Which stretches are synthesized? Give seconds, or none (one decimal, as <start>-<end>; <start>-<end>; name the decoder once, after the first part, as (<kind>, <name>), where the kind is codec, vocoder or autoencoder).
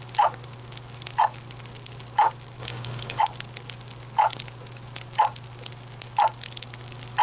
2.6-3.2 (codec, DAC)